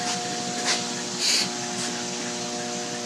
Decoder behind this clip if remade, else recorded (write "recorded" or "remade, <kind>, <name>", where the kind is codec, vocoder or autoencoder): recorded